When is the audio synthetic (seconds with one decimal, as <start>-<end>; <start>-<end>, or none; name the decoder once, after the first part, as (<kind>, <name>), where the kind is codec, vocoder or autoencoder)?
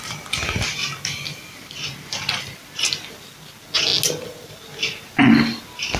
none